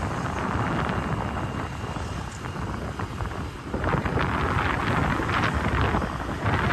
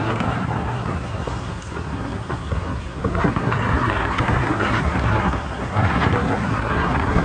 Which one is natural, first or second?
first